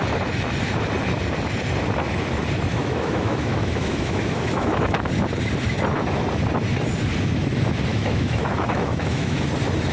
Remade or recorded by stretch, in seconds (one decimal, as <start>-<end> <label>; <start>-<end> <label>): 0.0-2.7 recorded; 2.7-5.1 remade; 5.1-7.9 recorded; 7.9-9.4 remade; 9.4-9.9 recorded